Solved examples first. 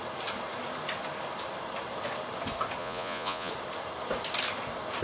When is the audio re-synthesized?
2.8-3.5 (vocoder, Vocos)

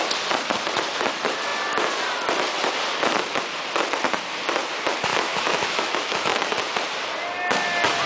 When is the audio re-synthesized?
5.1-6.5 (autoencoder, DAC-VAE)

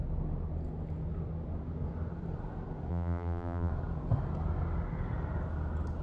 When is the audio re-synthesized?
2.9-3.7 (vocoder, BigVGAN v2)